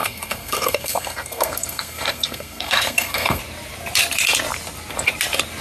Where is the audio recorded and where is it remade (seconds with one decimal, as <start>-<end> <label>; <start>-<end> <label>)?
0.0-3.4 remade; 3.4-5.6 recorded